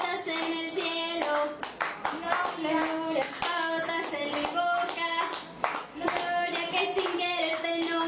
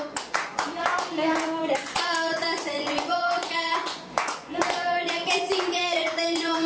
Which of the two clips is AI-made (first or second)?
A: second